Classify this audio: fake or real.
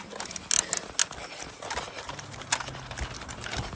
real